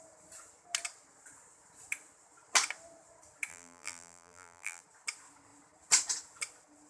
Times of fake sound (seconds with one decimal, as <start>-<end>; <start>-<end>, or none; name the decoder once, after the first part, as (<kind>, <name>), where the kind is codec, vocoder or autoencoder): 3.5-4.8 (vocoder, BigVGAN v2)